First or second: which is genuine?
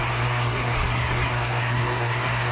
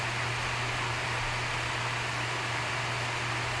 second